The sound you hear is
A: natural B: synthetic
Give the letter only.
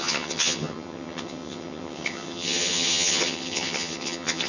B